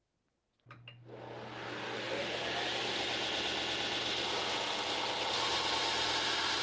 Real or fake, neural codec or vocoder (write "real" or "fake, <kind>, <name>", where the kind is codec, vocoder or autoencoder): real